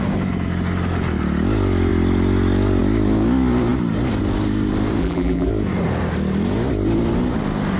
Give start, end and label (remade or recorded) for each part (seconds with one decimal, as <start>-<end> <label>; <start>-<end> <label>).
0.0-5.0 recorded; 5.0-5.5 remade; 5.5-7.8 recorded